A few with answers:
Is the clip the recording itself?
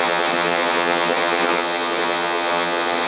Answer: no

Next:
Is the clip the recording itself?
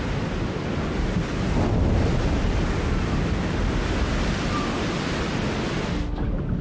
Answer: yes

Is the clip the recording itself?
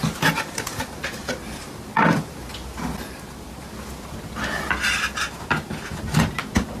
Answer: yes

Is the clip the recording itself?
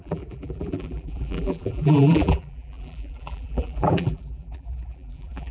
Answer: no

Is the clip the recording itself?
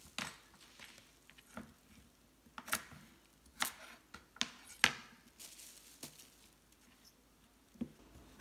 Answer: yes